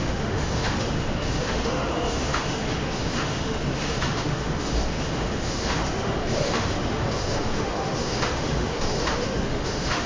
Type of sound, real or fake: fake